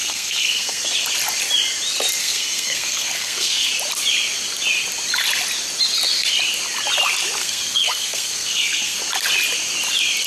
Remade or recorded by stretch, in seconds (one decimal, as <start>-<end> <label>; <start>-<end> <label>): 0.0-0.8 remade; 0.8-2.2 recorded; 2.2-3.7 remade; 3.7-7.4 recorded; 7.4-9.0 remade; 9.0-10.3 recorded